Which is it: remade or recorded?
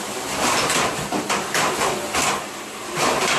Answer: recorded